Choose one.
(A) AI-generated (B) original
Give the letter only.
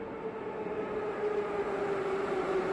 B